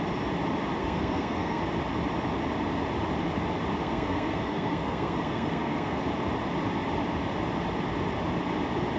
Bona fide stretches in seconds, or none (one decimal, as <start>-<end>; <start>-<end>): 0.0-0.8; 1.6-3.8; 6.0-9.0